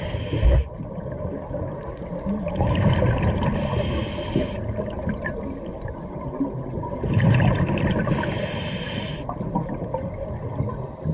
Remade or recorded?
recorded